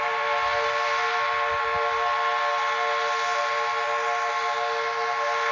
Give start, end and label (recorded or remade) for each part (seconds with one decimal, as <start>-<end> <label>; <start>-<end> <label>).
0.0-5.5 recorded